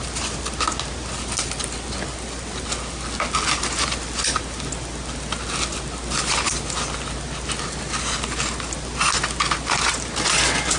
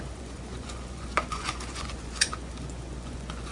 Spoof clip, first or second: second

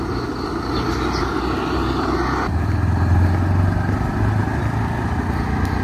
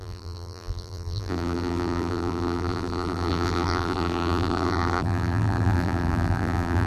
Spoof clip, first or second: second